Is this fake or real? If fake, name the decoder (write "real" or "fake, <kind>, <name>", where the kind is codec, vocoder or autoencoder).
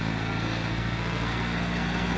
fake, codec, SNAC